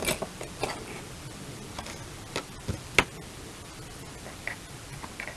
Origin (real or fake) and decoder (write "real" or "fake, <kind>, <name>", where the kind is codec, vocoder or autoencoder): real